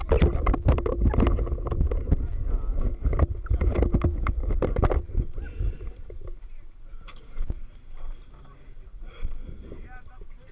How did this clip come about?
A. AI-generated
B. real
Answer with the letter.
B